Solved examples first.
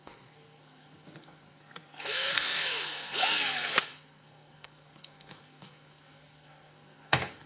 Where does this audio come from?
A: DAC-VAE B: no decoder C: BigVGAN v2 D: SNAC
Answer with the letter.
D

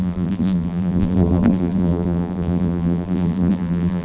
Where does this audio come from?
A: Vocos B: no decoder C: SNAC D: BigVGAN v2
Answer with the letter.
D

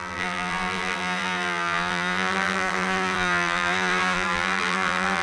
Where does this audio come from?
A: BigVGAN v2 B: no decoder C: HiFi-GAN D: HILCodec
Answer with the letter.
A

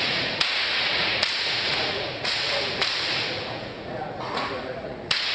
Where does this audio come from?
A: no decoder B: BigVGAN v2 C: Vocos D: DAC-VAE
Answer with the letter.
C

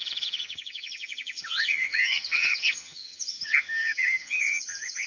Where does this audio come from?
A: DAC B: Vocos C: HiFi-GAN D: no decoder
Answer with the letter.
C